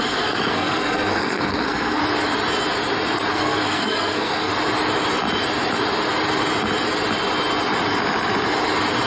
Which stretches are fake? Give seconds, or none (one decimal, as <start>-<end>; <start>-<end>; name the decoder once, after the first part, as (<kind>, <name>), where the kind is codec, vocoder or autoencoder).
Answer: 0.0-2.0 (codec, SNAC); 3.3-4.5